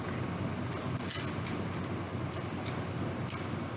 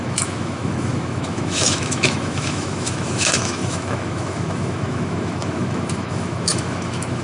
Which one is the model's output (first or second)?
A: second